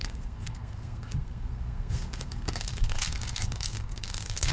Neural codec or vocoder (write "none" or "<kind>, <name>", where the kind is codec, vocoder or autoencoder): codec, SNAC